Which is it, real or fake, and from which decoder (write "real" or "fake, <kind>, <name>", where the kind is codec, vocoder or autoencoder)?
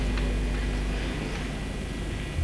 real